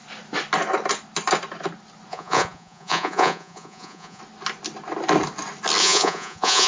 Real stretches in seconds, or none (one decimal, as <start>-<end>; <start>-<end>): 0.0-2.1; 4.2-5.8